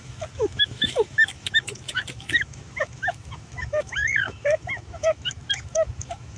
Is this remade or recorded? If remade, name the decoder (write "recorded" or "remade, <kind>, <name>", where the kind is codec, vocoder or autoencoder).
remade, autoencoder, DAC-VAE